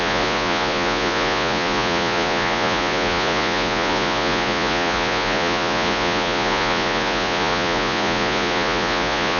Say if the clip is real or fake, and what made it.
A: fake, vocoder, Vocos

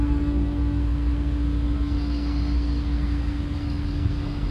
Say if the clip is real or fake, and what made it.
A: fake, codec, SNAC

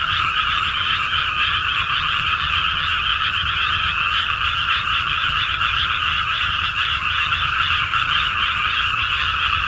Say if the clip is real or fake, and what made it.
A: fake, vocoder, HiFi-GAN